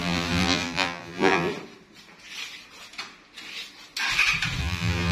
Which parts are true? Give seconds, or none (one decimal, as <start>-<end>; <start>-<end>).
1.5-4.6